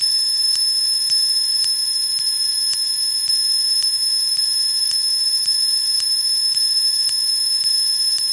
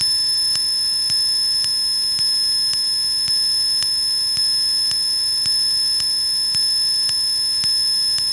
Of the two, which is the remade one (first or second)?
first